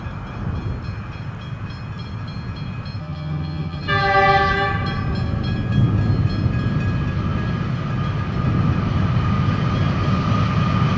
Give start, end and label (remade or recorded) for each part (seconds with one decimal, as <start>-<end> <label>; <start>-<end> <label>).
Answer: 0.0-3.0 recorded; 3.0-3.8 remade; 3.8-11.0 recorded